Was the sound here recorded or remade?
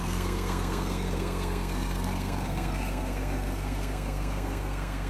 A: remade